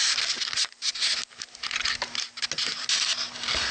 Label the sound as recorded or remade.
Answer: recorded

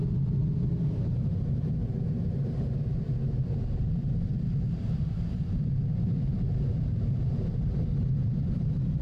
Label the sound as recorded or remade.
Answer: remade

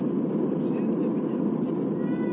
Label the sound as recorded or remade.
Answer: recorded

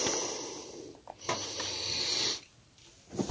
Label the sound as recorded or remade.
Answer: recorded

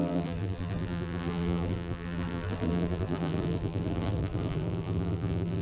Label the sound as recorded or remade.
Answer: remade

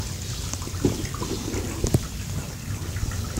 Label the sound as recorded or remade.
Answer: recorded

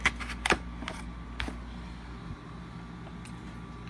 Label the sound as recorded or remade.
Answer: recorded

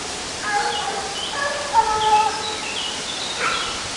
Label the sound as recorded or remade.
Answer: recorded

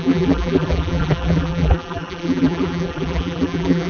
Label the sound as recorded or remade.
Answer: remade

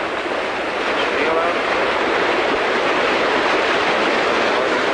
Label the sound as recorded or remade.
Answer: recorded